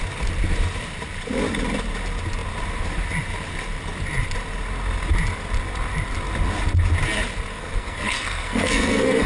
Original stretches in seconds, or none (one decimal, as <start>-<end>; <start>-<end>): 0.0-7.5